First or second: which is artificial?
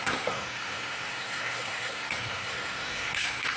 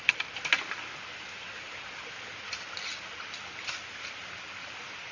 first